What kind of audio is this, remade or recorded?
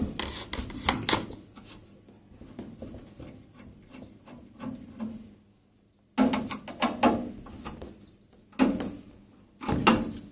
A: recorded